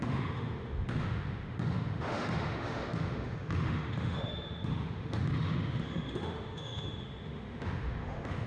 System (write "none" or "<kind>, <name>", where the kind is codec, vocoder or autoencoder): autoencoder, DAC-VAE